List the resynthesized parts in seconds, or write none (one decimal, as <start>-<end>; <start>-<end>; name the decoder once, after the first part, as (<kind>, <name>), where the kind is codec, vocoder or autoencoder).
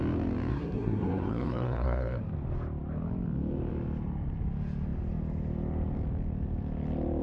0.5-2.2 (codec, SNAC)